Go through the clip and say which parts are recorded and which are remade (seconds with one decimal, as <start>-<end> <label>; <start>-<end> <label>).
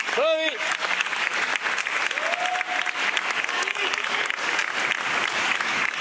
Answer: 0.0-1.5 remade; 1.5-3.5 recorded; 3.5-4.6 remade; 4.6-5.3 recorded; 5.3-6.0 remade